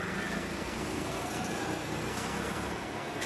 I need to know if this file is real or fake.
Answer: fake